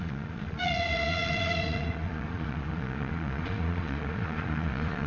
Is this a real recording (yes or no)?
no